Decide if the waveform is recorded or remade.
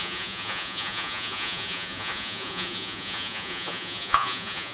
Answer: remade